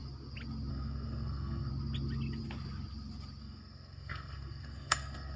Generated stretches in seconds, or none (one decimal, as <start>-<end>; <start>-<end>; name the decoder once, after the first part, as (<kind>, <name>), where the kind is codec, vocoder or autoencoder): 0.7-1.7 (codec, SNAC); 3.4-5.4